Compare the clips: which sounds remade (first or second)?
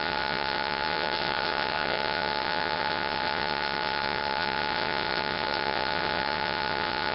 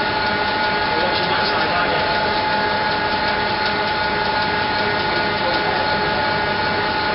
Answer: first